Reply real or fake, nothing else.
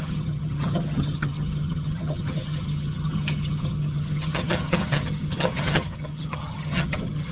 fake